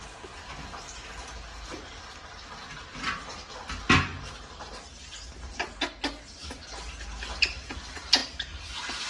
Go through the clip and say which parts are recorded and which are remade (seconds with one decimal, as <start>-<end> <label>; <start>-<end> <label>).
0.0-9.1 recorded